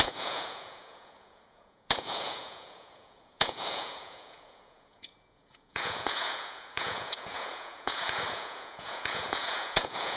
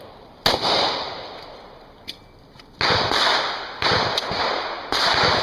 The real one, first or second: second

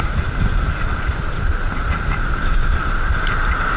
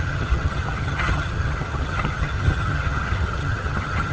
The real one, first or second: first